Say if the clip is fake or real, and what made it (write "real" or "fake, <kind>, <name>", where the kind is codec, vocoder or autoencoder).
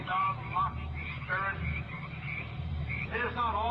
fake, vocoder, BigVGAN v2